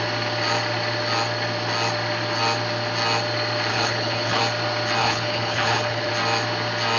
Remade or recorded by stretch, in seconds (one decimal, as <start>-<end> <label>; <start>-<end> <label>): 0.0-3.7 recorded; 3.7-4.4 remade; 4.4-5.0 recorded; 5.0-6.1 remade; 6.1-7.0 recorded